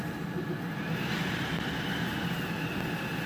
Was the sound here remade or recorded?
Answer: recorded